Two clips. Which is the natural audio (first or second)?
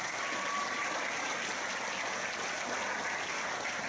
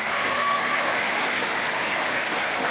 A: first